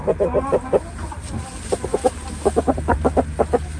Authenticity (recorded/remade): recorded